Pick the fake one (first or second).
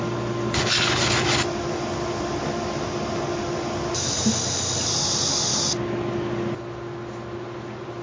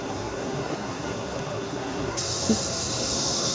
second